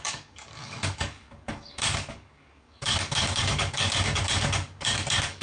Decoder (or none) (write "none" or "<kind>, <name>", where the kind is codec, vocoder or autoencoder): codec, DAC